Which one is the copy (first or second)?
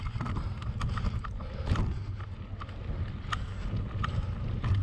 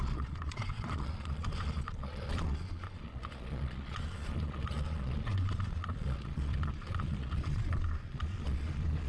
second